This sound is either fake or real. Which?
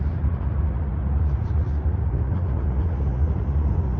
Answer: fake